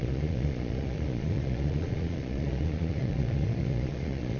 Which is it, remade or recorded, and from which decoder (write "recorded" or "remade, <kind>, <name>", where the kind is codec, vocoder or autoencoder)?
remade, vocoder, Vocos